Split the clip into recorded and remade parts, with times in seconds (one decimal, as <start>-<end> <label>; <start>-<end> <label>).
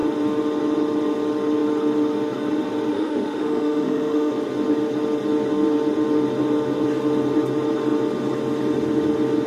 0.0-2.9 recorded; 2.9-4.3 remade; 4.3-9.5 recorded